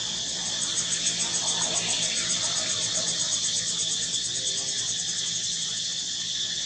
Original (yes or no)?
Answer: yes